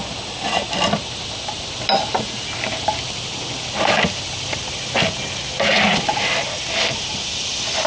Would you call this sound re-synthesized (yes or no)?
no